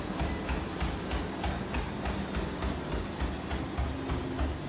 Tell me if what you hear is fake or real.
real